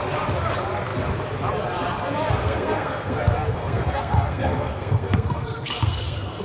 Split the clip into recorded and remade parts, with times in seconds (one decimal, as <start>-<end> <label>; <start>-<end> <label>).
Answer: 0.0-2.4 recorded; 2.4-6.4 remade